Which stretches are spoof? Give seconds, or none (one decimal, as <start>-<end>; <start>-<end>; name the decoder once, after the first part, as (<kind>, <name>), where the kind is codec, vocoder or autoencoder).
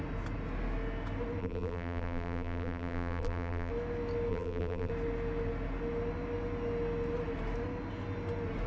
1.4-3.7 (vocoder, BigVGAN v2); 4.3-4.9